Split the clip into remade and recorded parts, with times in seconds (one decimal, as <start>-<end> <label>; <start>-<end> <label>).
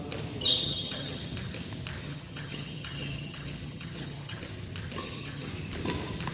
0.0-0.6 recorded; 0.6-1.2 remade; 1.2-2.0 recorded; 2.0-4.4 remade; 4.4-5.0 recorded; 5.0-5.5 remade; 5.5-6.3 recorded